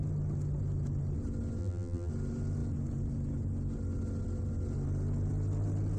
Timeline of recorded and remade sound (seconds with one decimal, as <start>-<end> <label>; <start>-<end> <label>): 0.0-1.6 recorded; 1.6-2.1 remade; 2.1-6.0 recorded